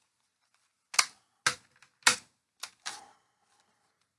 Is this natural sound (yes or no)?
yes